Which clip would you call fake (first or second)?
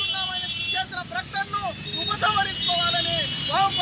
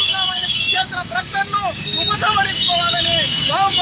second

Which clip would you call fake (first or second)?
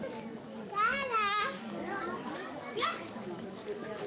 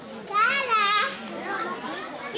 first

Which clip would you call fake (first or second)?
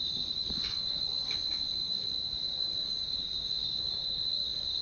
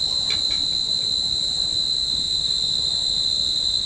first